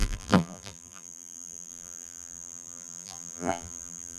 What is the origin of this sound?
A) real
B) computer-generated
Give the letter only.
B